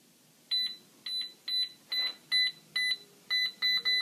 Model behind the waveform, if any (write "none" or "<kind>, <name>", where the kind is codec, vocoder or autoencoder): none